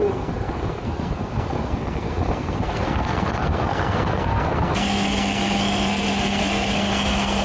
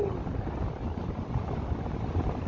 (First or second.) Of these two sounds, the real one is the second